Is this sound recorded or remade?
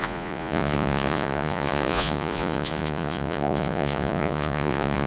remade